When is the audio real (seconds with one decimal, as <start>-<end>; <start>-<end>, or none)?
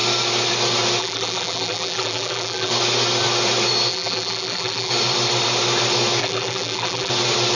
0.0-1.0; 2.7-3.9; 4.9-6.2; 7.1-7.5